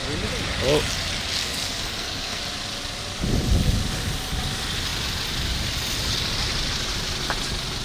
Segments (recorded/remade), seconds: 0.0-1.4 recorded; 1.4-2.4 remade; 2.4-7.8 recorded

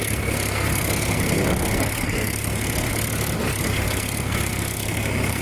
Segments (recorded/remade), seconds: 0.0-2.9 remade; 2.9-3.6 recorded; 3.6-5.4 remade

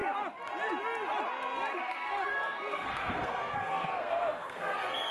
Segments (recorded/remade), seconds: 0.0-1.7 recorded; 1.7-5.1 remade

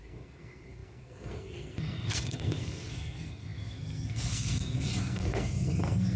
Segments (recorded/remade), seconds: 0.0-6.2 remade

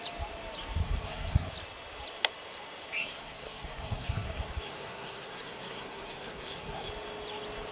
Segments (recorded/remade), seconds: 0.0-0.8 recorded; 0.8-1.5 remade; 1.5-3.0 recorded; 3.0-6.9 remade; 6.9-7.7 recorded